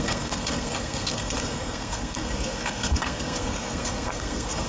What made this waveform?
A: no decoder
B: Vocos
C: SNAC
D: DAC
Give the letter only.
C